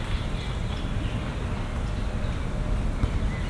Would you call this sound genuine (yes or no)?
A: yes